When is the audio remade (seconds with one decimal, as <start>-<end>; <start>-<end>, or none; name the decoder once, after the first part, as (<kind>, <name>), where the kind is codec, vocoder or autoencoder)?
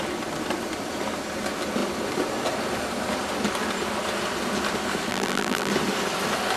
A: 5.1-5.7 (vocoder, BigVGAN v2)